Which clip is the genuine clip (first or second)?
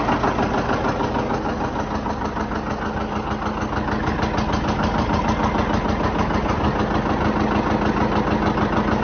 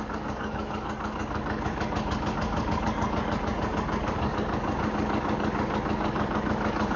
first